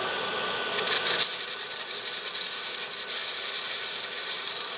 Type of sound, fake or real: real